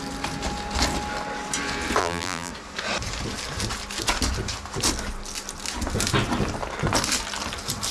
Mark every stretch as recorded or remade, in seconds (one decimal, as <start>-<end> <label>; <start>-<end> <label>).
0.0-2.0 recorded; 2.0-2.5 remade; 2.5-7.9 recorded